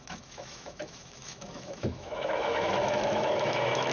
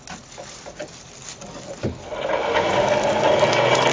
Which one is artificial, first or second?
first